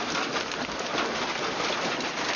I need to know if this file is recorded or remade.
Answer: recorded